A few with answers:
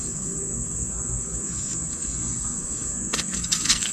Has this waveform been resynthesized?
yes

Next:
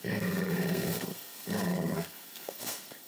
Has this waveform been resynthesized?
yes